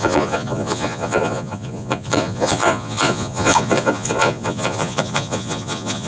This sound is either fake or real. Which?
fake